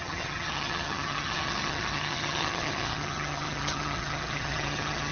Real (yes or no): no